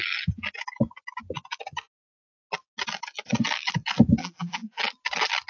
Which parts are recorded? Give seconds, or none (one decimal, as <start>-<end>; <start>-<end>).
0.0-4.2; 4.8-5.5